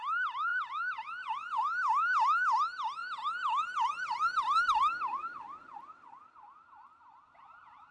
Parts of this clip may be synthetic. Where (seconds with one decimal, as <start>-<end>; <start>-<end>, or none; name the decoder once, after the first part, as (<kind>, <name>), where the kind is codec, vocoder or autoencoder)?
none